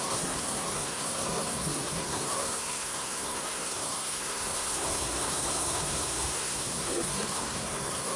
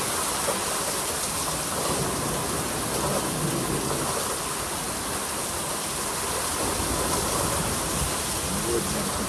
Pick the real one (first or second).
second